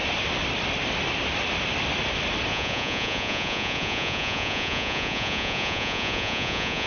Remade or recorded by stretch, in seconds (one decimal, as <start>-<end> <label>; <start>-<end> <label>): 0.0-2.5 recorded; 2.5-6.9 remade

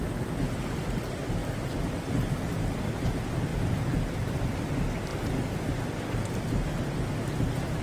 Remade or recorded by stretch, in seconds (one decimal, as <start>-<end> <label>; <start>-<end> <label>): 0.0-1.4 recorded; 1.4-2.0 remade; 2.0-3.5 recorded; 3.5-4.5 remade; 4.5-7.8 recorded

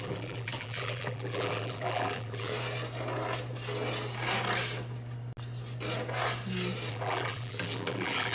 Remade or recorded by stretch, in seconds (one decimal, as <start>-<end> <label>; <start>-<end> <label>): 0.0-2.5 remade; 2.5-6.9 recorded; 6.9-8.3 remade

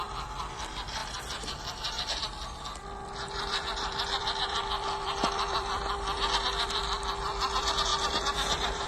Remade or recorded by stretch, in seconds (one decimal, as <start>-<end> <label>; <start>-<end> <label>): 0.0-8.9 remade

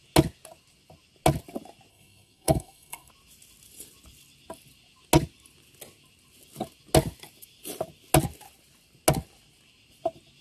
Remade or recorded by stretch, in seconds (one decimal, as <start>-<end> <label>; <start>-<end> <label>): 0.0-1.9 recorded; 1.9-3.1 remade; 3.1-10.4 recorded

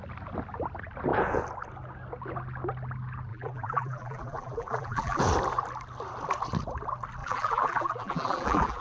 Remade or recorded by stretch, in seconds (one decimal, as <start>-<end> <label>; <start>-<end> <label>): 0.0-3.3 recorded; 3.3-5.2 remade; 5.2-7.2 recorded; 7.2-8.8 remade